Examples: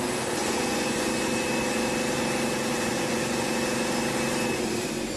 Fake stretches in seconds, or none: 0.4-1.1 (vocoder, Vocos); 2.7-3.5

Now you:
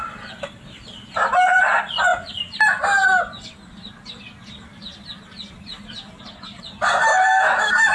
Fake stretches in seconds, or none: 7.1-7.9 (autoencoder, DAC-VAE)

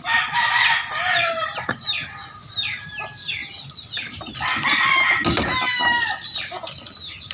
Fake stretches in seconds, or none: 0.9-1.7 (vocoder, BigVGAN v2); 3.4-4.7

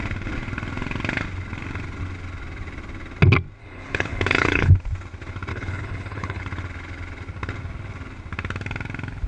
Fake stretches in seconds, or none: 3.6-4.7 (codec, HILCodec); 5.5-6.4

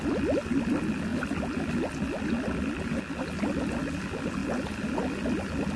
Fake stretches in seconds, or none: none

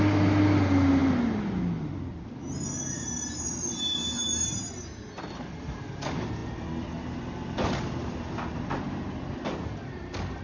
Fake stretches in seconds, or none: none

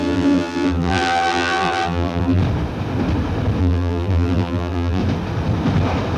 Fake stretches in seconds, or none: 0.0-2.4 (vocoder, BigVGAN v2); 3.6-5.0